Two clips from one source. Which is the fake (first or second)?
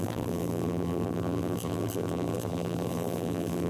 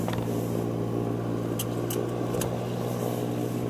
first